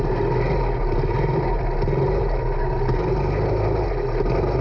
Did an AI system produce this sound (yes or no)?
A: no